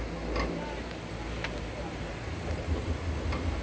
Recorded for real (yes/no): yes